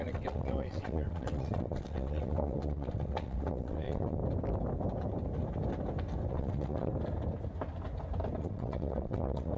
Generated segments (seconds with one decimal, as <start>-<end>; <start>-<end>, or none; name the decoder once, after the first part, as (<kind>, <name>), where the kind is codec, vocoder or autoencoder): 0.0-4.2 (vocoder, WaveNeXt); 6.3-6.9; 8.4-9.6